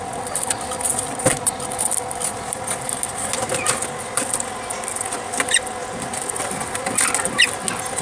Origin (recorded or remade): recorded